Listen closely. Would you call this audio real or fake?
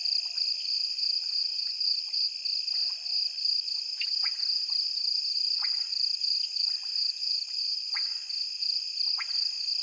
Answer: real